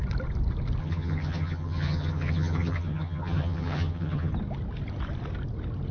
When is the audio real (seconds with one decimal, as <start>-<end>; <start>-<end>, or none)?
0.0-0.8; 4.3-5.9